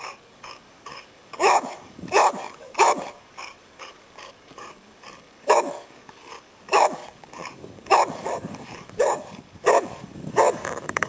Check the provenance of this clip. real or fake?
fake